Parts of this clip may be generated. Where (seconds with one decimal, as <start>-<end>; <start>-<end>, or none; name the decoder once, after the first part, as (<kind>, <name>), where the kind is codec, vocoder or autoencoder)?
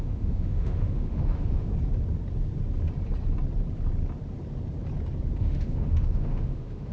0.0-1.7 (autoencoder, DAC-VAE); 5.4-6.9